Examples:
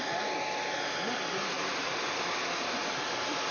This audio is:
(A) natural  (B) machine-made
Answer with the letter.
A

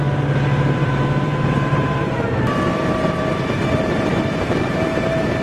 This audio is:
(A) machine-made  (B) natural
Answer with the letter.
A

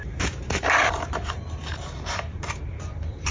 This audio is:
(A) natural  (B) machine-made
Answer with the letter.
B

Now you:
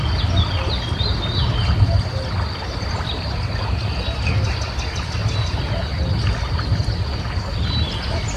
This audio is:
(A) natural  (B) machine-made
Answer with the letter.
A